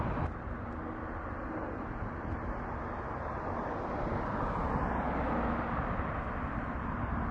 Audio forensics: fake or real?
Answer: real